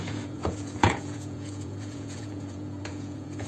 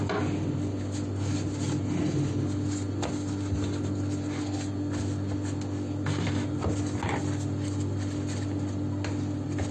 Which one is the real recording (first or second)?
second